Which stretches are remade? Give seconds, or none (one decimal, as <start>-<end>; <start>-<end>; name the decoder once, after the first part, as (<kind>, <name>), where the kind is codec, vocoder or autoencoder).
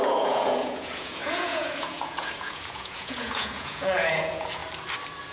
0.0-4.6 (vocoder, Vocos)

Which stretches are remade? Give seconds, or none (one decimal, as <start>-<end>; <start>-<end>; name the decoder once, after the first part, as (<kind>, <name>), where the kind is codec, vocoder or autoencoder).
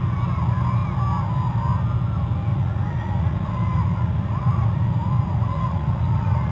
2.5-6.5 (vocoder, Vocos)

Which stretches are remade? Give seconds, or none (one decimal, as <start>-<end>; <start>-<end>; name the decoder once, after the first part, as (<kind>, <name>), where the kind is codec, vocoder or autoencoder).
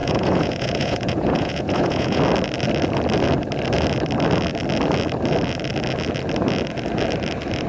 0.0-2.2 (vocoder, Vocos)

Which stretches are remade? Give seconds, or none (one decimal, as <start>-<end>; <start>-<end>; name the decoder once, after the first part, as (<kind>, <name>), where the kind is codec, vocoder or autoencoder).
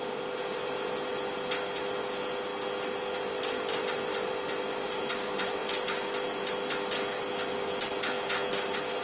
none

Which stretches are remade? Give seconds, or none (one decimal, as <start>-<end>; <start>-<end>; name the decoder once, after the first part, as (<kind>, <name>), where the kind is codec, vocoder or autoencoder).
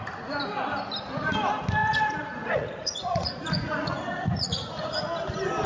1.8-5.0 (vocoder, Vocos)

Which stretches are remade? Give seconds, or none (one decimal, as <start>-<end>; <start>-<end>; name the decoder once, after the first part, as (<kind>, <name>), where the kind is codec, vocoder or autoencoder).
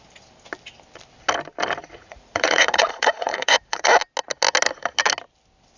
1.8-4.0 (vocoder, Vocos)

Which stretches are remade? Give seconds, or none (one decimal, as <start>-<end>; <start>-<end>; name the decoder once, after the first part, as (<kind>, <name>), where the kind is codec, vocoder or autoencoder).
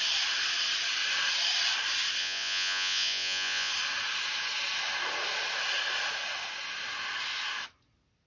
2.2-3.7 (vocoder, Vocos)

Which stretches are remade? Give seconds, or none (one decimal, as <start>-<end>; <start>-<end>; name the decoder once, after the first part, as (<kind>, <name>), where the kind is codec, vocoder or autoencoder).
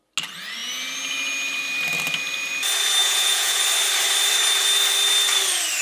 3.0-3.6 (vocoder, Vocos)